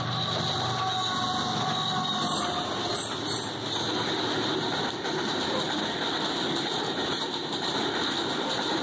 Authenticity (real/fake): real